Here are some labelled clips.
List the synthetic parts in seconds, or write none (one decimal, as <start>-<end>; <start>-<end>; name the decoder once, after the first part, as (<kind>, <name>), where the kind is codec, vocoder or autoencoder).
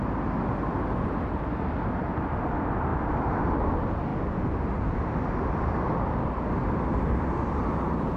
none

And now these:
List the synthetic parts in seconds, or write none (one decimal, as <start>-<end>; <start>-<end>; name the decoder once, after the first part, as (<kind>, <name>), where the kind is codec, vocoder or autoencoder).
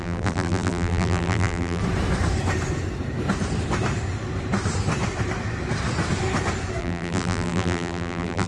0.0-1.8 (vocoder, BigVGAN v2); 6.8-8.5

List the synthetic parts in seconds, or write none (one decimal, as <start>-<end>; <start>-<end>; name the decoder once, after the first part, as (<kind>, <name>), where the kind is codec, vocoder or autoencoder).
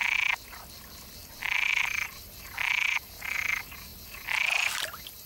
1.2-3.4 (vocoder, BigVGAN v2)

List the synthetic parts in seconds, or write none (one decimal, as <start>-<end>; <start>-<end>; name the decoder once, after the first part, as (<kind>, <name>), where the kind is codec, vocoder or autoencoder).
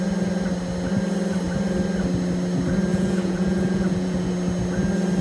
2.9-4.3 (vocoder, Vocos)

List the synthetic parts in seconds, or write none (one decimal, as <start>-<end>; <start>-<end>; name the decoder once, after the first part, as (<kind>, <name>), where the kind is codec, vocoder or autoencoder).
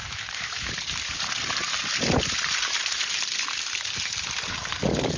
0.0-0.7 (autoencoder, DAC-VAE)